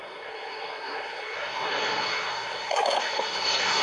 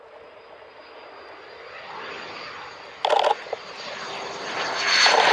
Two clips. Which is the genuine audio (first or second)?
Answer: second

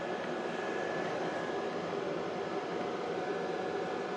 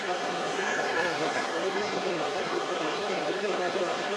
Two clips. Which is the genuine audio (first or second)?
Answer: first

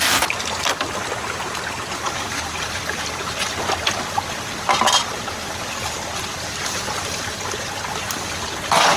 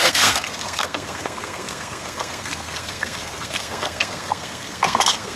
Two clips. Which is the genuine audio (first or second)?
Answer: first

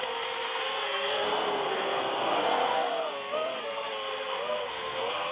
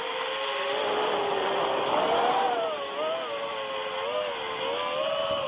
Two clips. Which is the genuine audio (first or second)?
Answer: second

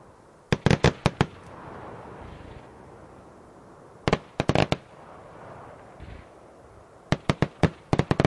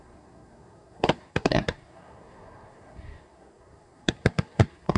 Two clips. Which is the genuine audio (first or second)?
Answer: first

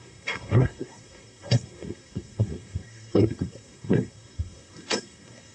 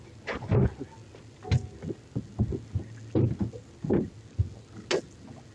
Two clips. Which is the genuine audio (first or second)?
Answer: second